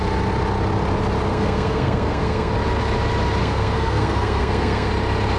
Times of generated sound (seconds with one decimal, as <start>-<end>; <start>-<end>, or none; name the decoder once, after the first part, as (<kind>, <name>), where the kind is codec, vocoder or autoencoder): 1.3-2.5 (codec, SNAC); 3.4-4.9